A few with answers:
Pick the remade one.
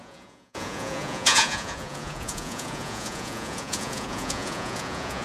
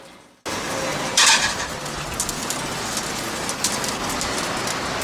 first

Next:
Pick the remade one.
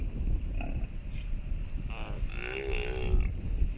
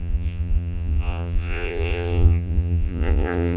second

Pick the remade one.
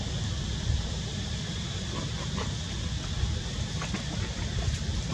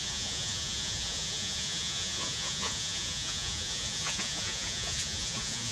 second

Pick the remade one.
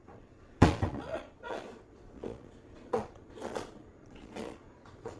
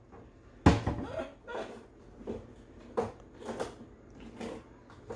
first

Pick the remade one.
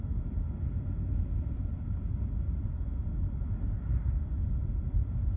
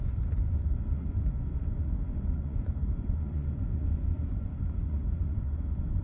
second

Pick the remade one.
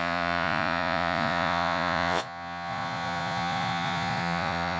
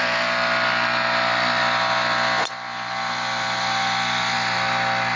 first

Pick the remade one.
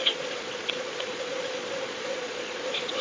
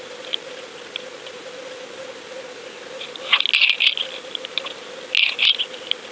first